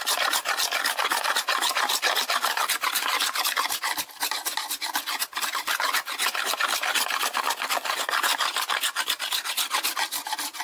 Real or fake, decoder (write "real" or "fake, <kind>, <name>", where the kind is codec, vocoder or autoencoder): real